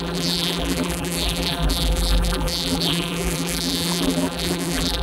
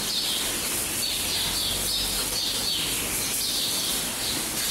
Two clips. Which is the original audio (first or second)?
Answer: second